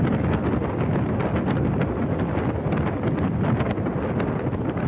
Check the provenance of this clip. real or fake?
real